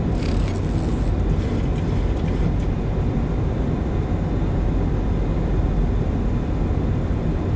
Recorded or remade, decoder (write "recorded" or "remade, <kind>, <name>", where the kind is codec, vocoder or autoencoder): recorded